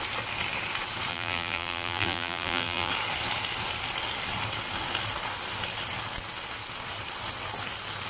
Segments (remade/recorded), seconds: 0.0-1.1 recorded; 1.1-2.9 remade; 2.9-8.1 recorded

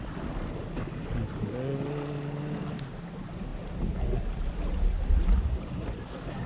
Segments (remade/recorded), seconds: 0.0-6.5 recorded

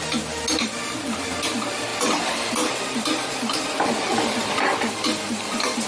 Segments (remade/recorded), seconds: 0.0-5.9 recorded

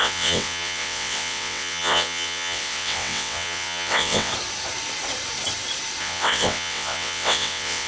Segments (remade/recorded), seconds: 0.0-4.3 remade; 4.3-6.0 recorded; 6.0-7.9 remade